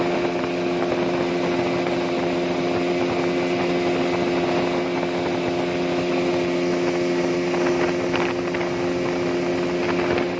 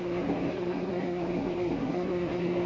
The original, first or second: first